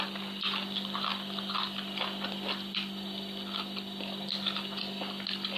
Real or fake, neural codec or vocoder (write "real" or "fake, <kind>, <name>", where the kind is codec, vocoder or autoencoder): real